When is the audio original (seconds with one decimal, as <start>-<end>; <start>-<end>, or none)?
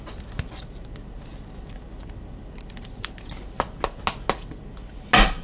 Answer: 0.0-5.4